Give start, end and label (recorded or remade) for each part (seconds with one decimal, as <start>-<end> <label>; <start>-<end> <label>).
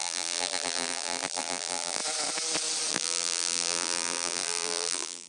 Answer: 0.0-2.0 remade; 2.0-2.9 recorded; 2.9-5.3 remade